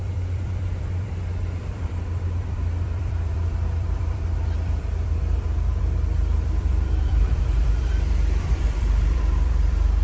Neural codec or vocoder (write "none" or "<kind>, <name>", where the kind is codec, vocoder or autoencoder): vocoder, BigVGAN v2